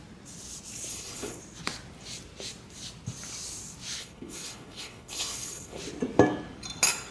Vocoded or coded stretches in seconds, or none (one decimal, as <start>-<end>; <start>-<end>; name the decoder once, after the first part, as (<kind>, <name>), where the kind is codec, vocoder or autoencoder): 0.9-1.4 (codec, HILCodec); 4.0-5.8